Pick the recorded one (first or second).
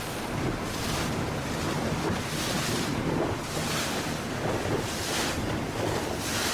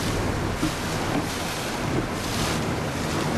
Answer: second